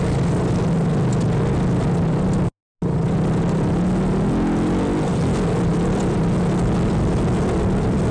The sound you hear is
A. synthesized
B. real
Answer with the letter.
B